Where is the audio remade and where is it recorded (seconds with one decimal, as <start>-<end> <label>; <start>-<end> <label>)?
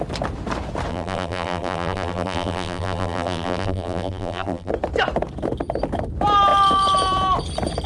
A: 0.0-0.9 recorded; 0.9-4.7 remade; 4.7-7.9 recorded